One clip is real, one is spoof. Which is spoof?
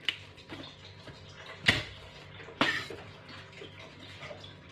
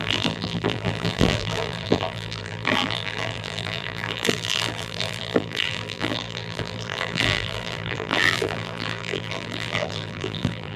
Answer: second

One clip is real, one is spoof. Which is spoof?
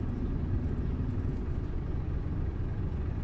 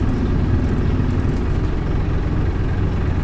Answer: first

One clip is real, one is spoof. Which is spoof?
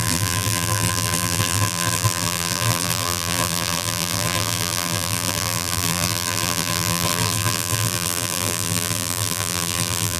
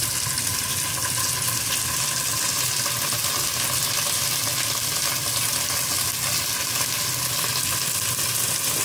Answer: first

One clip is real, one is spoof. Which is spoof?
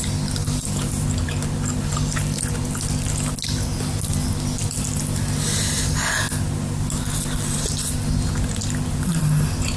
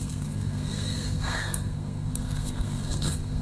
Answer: second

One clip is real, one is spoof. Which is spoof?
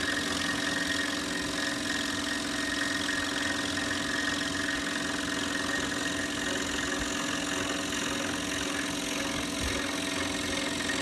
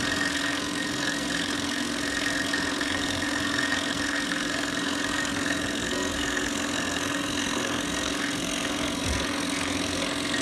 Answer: second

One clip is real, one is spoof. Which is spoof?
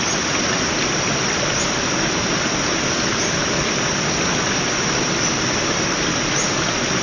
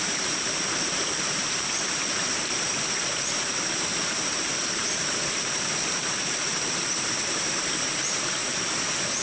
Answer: second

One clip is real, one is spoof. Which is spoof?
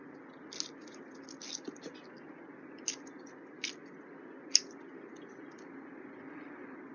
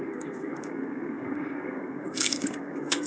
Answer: second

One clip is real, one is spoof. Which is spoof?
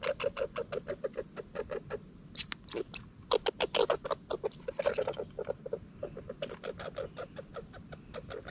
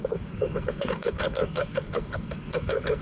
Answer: second